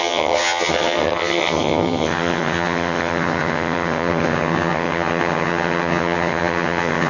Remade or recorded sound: remade